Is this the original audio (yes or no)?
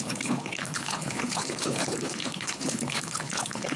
no